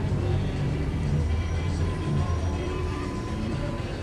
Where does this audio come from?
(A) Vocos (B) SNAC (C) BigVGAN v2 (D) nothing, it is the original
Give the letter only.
C